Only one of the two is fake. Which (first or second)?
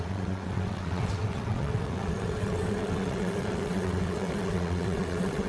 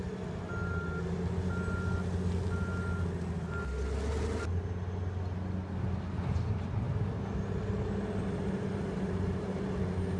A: first